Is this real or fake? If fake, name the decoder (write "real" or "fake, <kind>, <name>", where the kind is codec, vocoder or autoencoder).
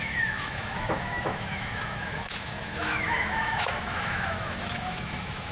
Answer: fake, autoencoder, DAC-VAE